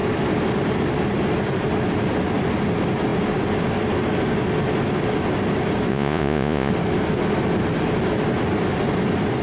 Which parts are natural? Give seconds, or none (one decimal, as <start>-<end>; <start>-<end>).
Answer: 0.0-5.9; 6.7-9.4